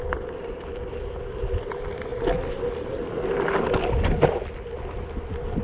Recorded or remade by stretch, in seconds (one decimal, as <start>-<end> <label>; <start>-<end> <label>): 0.0-5.6 recorded